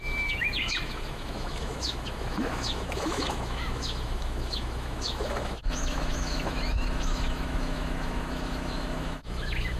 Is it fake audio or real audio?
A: fake